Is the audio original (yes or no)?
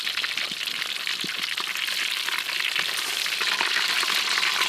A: yes